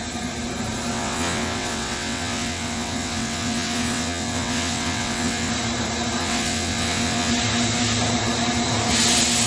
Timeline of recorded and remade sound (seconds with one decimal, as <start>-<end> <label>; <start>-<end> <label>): 0.0-0.9 recorded; 0.9-5.5 remade; 5.5-6.2 recorded; 6.2-7.3 remade; 7.3-9.5 recorded